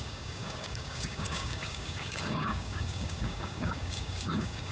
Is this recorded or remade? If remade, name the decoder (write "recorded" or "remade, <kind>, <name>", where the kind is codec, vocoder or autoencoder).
remade, codec, DAC